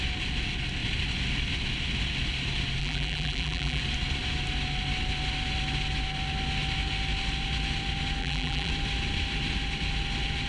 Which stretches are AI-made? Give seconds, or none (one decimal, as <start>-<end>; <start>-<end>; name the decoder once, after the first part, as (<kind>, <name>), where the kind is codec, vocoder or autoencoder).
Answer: 2.8-3.8 (vocoder, BigVGAN v2); 8.2-8.7